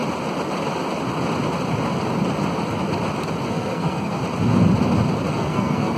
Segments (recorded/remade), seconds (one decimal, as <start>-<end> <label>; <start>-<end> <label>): 0.0-3.5 recorded; 3.5-4.2 remade; 4.2-5.3 recorded; 5.3-6.0 remade